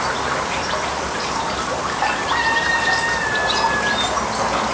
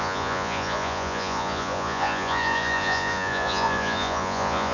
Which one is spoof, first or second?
second